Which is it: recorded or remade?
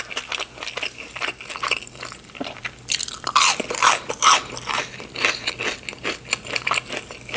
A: recorded